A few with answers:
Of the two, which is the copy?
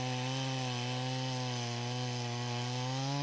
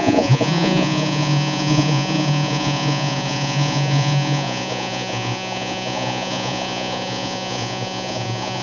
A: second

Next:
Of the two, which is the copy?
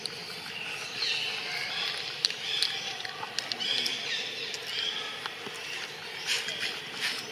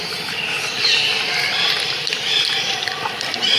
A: second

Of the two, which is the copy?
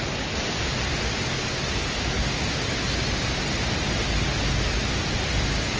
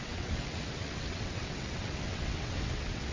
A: second